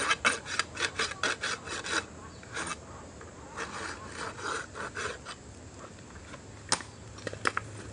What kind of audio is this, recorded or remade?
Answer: recorded